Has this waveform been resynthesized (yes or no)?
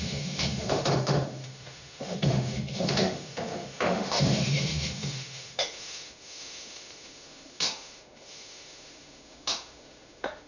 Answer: yes